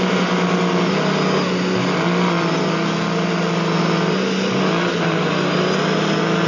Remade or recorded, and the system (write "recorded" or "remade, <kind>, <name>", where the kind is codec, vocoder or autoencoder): recorded